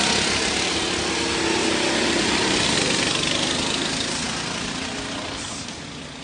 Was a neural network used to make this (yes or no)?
no